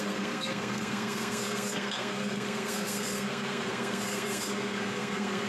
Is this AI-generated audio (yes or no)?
yes